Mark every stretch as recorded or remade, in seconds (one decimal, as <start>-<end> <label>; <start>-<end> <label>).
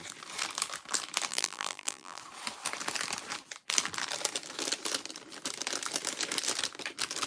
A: 0.0-1.3 recorded; 1.3-2.2 remade; 2.2-7.3 recorded